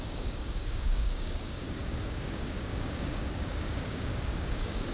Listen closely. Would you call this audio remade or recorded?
remade